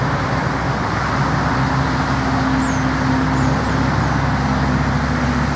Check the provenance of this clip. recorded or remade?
recorded